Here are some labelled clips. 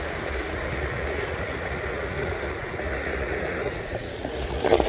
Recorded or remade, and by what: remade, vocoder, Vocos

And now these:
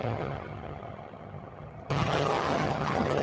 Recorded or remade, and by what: remade, vocoder, HiFi-GAN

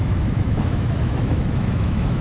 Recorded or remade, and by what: remade, autoencoder, DAC-VAE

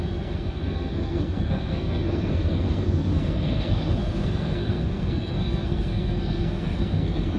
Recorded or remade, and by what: remade, codec, SNAC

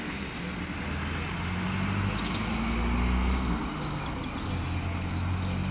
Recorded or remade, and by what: recorded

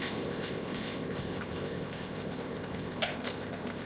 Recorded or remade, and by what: remade, codec, ZipCodec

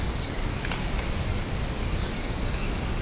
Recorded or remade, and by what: remade, codec, DAC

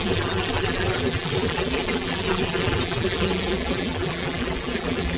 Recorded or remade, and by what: remade, vocoder, BigVGAN v2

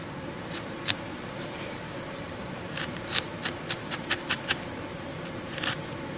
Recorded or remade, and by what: remade, vocoder, BigVGAN v2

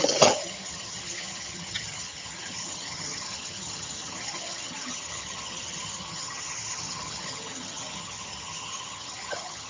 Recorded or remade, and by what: remade, vocoder, HiFi-GAN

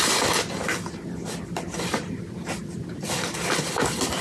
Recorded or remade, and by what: recorded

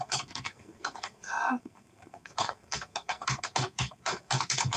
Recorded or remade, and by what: remade, codec, SNAC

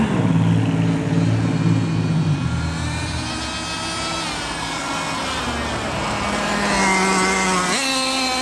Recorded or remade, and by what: recorded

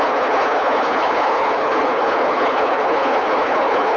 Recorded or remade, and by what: remade, codec, HILCodec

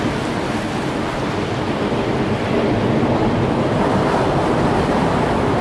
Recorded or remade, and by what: recorded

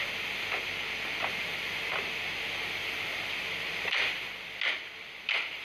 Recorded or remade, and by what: recorded